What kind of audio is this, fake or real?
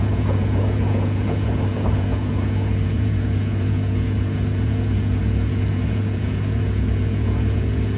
fake